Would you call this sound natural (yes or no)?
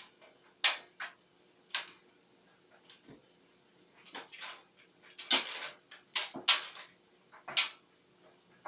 yes